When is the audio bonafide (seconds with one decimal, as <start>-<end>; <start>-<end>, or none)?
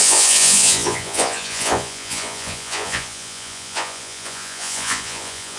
none